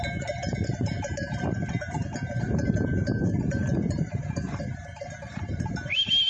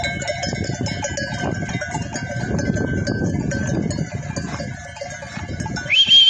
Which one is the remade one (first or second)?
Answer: first